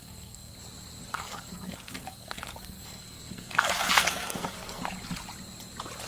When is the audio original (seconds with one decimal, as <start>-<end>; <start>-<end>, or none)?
0.5-1.1; 4.8-6.1